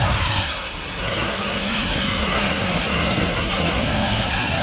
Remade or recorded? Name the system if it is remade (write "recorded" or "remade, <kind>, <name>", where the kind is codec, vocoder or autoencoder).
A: remade, codec, SNAC